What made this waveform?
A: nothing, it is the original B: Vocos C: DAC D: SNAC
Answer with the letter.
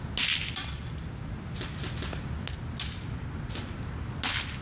A